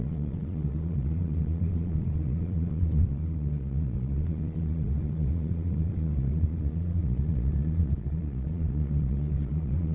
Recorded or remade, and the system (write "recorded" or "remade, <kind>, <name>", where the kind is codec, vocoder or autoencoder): remade, vocoder, Vocos